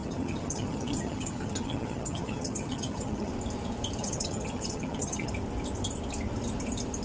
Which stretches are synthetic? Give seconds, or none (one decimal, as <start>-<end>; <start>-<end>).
0.0-3.3; 4.0-5.3